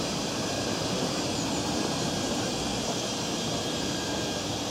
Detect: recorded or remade remade